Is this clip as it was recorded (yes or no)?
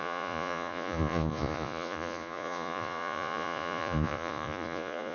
no